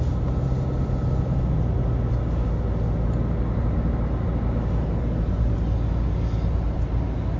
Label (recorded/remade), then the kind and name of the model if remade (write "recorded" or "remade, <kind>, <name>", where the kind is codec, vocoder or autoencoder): recorded